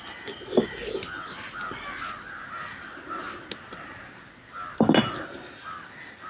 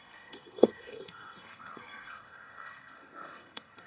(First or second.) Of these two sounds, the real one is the first